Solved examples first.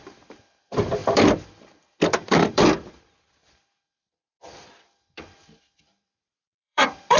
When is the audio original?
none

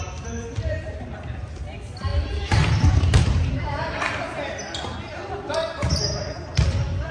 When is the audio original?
0.0-2.1; 4.5-7.1

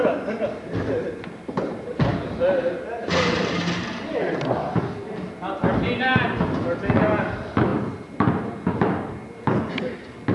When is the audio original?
0.0-3.0; 4.3-10.3

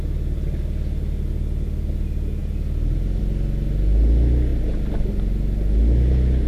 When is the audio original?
0.0-6.5

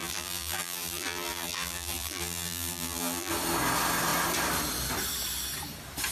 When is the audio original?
3.3-6.1

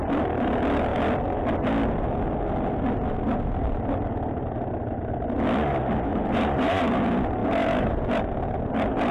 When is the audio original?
0.0-6.1; 6.8-7.4; 8.1-9.1

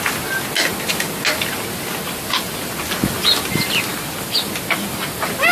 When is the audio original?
0.0-3.9; 4.5-5.5